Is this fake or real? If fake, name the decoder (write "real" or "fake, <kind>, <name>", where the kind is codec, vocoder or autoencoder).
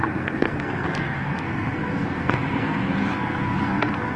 fake, codec, SNAC